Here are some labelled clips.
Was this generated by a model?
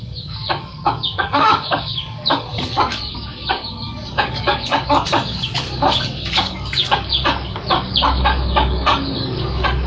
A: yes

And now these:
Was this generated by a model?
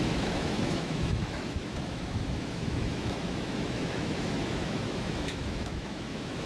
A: yes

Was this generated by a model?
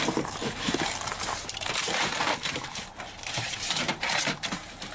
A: yes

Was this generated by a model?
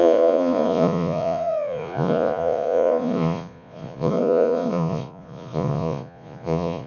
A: yes